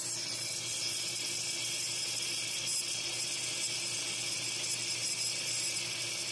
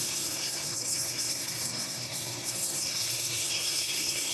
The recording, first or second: first